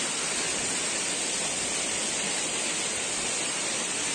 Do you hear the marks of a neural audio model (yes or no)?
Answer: no